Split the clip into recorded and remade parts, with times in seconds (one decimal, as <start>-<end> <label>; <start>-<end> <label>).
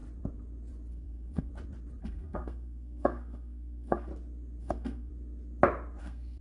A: 0.0-0.9 recorded; 0.9-1.5 remade; 1.5-2.0 recorded; 2.0-4.1 remade; 4.1-4.6 recorded; 4.6-5.1 remade; 5.1-6.0 recorded; 6.0-6.4 remade